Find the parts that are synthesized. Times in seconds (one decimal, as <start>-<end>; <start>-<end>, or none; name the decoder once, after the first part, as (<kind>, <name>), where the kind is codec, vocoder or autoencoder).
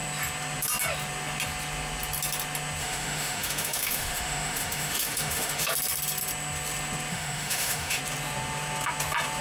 2.8-5.7 (autoencoder, DAC-VAE); 7.1-8.0